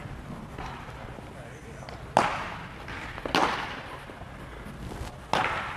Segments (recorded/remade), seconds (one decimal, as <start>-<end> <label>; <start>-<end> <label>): 0.0-5.8 recorded